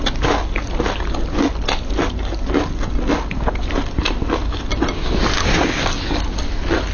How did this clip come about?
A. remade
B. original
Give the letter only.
B